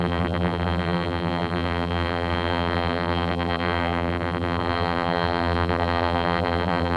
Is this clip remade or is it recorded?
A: remade